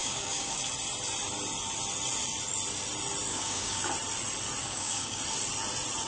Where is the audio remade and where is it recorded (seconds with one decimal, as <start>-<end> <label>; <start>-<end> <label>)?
0.0-0.6 remade; 0.6-3.3 recorded; 3.3-3.8 remade; 3.8-4.6 recorded; 4.6-5.2 remade; 5.2-6.1 recorded

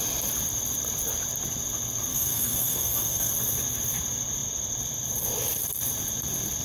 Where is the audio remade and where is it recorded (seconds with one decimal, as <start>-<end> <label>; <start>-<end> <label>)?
0.0-2.1 recorded; 2.1-3.3 remade; 3.3-6.6 recorded

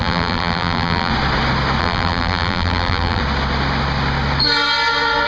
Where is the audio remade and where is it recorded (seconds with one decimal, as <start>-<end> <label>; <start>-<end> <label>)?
0.0-1.1 remade; 1.1-1.8 recorded; 1.8-3.2 remade; 3.2-5.3 recorded